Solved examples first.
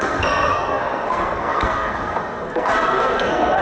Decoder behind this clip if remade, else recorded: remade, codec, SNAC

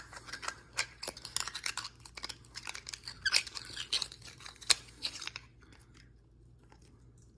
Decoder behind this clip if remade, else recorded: recorded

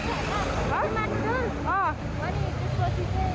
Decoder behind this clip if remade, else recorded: recorded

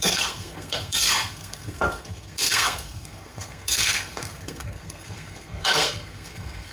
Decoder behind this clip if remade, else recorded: remade, codec, SNAC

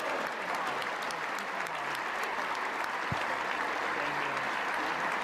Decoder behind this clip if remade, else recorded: recorded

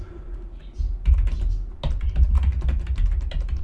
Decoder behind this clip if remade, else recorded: recorded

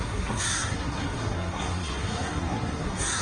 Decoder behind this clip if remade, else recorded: remade, codec, SNAC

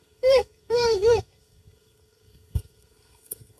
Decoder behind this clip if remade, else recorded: remade, codec, SNAC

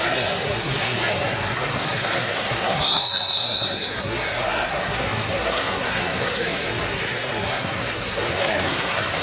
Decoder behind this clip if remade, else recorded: remade, codec, SNAC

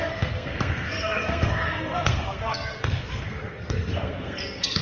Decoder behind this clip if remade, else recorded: remade, codec, SNAC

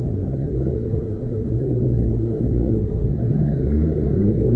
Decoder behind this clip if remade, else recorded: remade, codec, SNAC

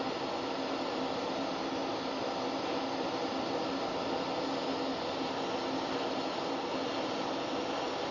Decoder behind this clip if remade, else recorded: recorded